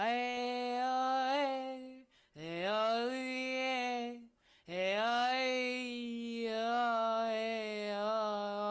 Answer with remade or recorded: remade